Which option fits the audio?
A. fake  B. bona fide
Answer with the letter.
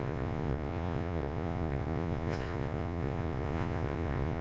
A